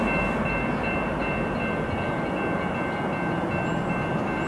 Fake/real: real